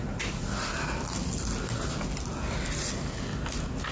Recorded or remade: recorded